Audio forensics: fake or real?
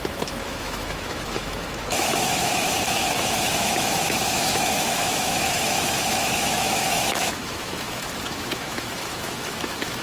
fake